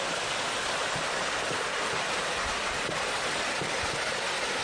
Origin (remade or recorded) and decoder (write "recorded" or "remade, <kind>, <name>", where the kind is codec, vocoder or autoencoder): recorded